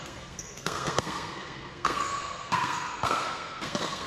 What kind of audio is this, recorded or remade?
remade